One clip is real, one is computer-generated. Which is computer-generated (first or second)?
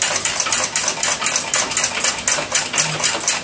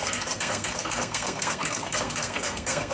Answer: second